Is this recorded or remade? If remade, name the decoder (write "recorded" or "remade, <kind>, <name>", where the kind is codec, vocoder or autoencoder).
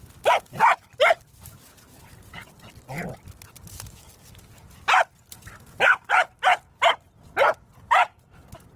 recorded